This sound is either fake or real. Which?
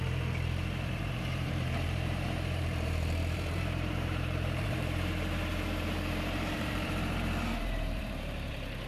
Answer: fake